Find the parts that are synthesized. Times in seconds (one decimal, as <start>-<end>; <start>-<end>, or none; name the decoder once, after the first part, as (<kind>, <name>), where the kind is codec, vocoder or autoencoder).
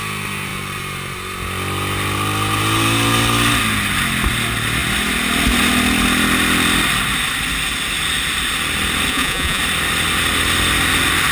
9.1-9.6 (vocoder, Vocos)